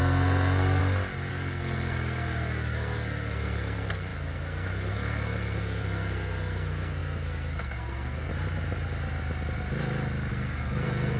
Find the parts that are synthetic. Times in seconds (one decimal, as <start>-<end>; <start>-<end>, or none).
0.0-0.8; 1.3-8.3; 10.3-11.2